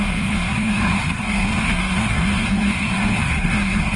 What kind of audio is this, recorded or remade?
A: remade